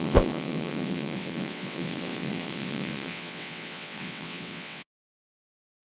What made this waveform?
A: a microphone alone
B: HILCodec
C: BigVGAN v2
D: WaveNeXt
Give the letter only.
D